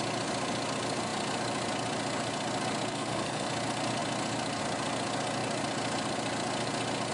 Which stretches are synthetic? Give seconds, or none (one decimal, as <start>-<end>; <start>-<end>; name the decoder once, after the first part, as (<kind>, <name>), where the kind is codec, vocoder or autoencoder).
2.9-3.5 (codec, SNAC)